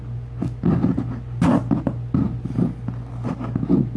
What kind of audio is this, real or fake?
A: real